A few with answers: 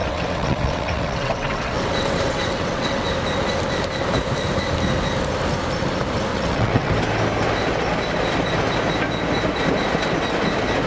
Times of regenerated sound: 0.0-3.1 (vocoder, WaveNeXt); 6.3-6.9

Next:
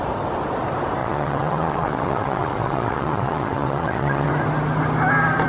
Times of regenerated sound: 1.0-4.3 (vocoder, WaveNeXt)

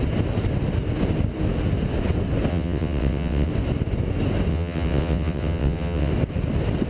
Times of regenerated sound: 2.5-3.5 (vocoder, WaveNeXt); 4.5-6.1

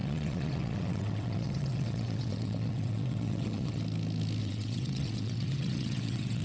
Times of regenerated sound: 0.0-3.8 (vocoder, WaveNeXt); 4.4-6.4

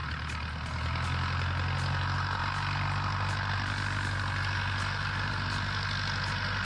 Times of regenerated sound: none